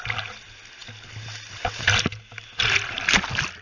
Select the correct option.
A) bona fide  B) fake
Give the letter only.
A